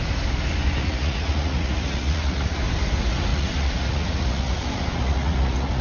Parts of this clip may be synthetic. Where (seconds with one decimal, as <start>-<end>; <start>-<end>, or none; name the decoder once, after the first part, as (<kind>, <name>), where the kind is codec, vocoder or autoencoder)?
0.8-2.6 (vocoder, Vocos); 3.3-5.8